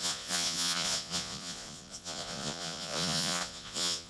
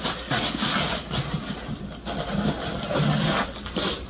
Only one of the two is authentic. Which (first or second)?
second